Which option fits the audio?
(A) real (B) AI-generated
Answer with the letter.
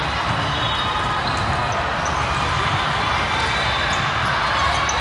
A